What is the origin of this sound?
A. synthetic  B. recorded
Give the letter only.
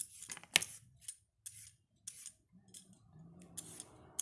B